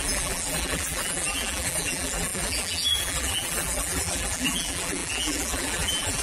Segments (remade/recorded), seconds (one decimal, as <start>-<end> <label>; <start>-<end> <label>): 0.0-6.2 remade